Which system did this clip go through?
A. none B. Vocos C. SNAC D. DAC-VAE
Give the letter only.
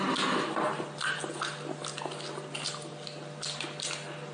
A